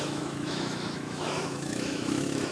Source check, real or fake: fake